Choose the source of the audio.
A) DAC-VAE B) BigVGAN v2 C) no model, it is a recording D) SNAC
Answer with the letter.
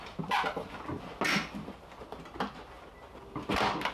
C